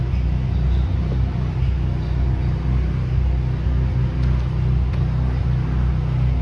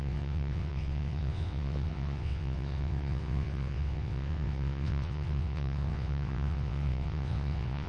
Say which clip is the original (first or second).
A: first